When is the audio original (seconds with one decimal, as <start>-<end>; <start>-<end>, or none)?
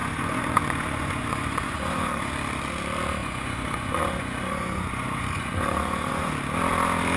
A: 2.3-3.2; 6.3-7.2